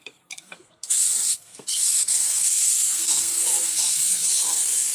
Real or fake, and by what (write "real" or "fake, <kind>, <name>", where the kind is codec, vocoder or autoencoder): fake, codec, SNAC